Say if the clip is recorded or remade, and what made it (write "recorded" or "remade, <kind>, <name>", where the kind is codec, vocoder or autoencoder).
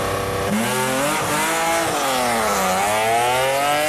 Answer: recorded